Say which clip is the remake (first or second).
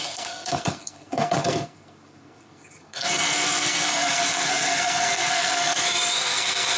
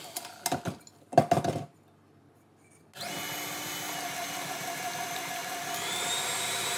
first